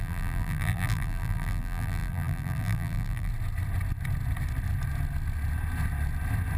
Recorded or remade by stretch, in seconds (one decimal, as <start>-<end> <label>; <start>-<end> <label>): 0.0-3.3 remade; 3.3-6.6 recorded